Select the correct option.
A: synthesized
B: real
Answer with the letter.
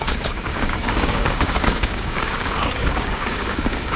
A